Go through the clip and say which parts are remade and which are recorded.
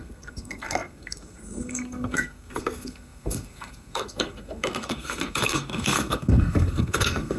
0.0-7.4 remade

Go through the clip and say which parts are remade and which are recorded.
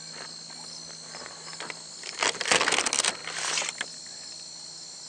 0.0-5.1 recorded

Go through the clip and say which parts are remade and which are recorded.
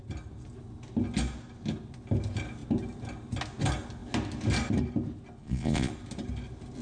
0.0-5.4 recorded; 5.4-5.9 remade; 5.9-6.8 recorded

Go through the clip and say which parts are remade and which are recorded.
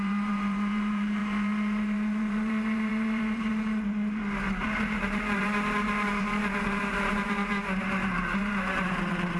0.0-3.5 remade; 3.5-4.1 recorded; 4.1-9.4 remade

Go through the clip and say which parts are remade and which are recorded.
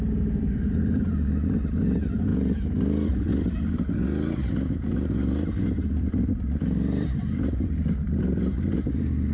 0.0-2.3 remade; 2.3-3.1 recorded; 3.1-9.3 remade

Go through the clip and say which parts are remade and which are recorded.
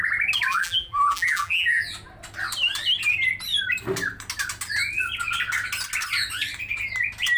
0.0-0.5 recorded; 0.5-1.8 remade; 1.8-7.4 recorded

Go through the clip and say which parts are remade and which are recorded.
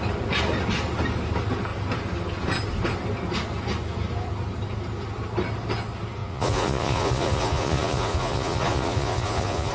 0.0-6.2 recorded; 6.2-9.7 remade